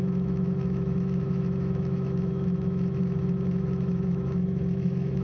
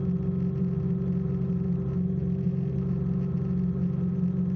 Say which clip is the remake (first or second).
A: first